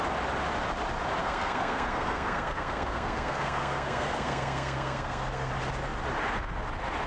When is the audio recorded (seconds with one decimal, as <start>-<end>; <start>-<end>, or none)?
0.0-1.2; 5.5-7.1